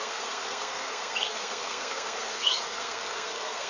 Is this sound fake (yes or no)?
yes